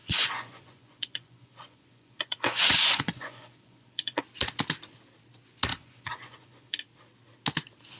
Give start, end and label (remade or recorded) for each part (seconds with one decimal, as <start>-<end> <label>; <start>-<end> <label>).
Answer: 0.0-4.2 remade; 4.2-5.7 recorded; 5.7-6.8 remade; 6.8-8.0 recorded